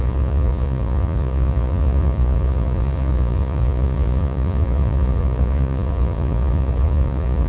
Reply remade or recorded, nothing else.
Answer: remade